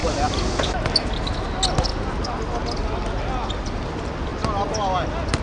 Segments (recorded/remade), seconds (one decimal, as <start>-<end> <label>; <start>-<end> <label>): 0.0-5.4 recorded